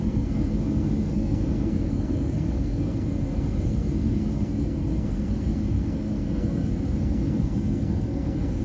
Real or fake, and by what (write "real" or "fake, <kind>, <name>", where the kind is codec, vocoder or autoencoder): fake, codec, SNAC